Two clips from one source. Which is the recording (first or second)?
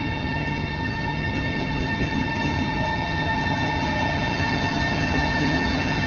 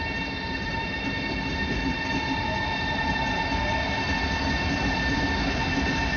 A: second